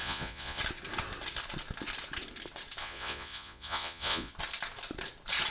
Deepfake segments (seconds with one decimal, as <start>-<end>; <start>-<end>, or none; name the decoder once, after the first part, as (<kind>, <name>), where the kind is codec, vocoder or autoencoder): 0.0-0.6 (vocoder, Vocos); 2.8-4.3